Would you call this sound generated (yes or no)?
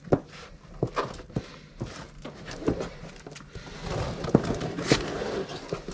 no